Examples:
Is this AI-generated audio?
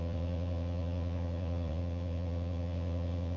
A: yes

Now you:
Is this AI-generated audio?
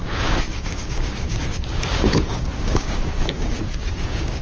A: yes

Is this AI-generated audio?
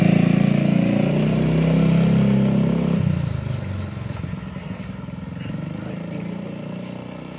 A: no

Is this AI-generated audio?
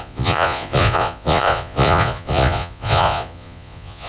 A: yes